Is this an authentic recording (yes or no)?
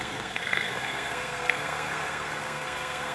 no